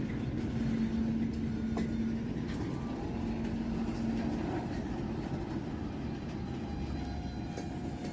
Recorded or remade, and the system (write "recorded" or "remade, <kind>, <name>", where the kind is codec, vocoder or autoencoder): recorded